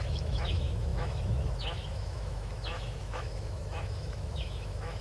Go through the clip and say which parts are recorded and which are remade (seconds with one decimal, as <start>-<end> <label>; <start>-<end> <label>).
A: 0.0-5.0 remade